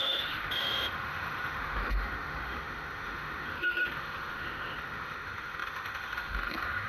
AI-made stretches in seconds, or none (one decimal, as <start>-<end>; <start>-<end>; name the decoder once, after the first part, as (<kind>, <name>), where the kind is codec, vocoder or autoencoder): 0.0-6.9 (autoencoder, DAC-VAE)